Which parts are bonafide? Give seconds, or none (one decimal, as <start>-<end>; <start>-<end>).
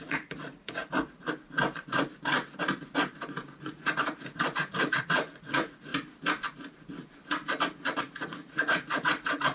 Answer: 0.8-3.6; 5.9-8.0